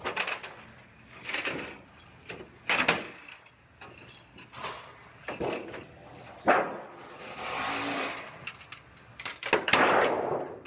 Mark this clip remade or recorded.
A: recorded